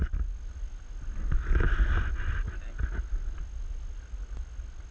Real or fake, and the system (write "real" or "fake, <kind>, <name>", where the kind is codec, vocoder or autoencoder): real